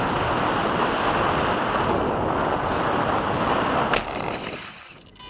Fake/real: real